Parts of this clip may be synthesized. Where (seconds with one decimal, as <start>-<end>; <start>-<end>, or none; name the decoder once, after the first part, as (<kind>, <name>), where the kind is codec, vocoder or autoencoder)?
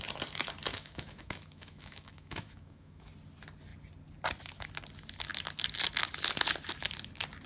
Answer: 0.7-3.1 (autoencoder, DAC-VAE)